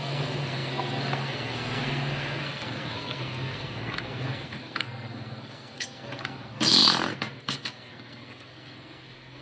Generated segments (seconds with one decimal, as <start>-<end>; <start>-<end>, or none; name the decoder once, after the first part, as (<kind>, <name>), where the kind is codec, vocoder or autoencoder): 0.0-9.4 (codec, SNAC)